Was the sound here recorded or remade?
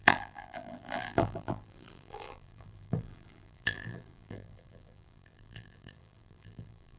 remade